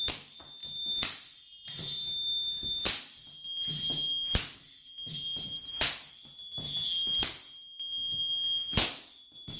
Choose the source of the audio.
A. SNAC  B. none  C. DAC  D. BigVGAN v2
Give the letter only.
B